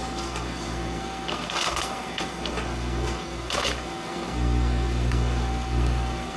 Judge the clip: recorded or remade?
remade